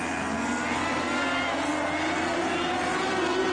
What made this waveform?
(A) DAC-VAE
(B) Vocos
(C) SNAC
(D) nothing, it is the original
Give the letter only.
D